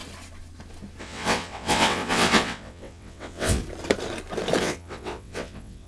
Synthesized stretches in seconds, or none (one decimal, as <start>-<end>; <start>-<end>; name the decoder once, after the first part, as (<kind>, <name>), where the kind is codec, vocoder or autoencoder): 1.0-3.6 (vocoder, WaveNeXt); 4.6-5.9